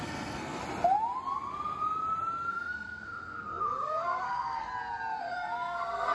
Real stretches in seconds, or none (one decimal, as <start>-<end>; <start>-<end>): 0.6-2.5; 4.7-5.2